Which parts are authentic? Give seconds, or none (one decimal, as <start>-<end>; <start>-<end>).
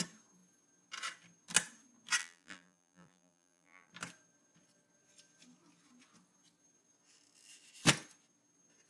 0.0-2.2; 3.9-8.9